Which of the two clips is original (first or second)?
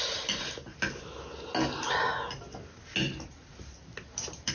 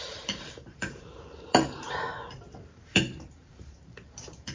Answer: first